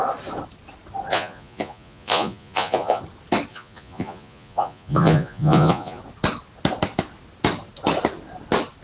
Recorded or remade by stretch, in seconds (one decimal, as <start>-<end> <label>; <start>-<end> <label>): 0.0-1.1 recorded; 1.1-3.0 remade; 3.0-3.5 recorded; 3.5-6.0 remade; 6.0-8.8 recorded